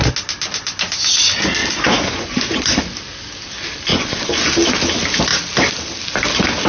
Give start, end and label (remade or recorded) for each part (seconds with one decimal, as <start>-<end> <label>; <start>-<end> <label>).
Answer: 0.0-1.6 recorded; 1.6-2.8 remade; 2.8-3.9 recorded; 3.9-4.5 remade; 4.5-6.7 recorded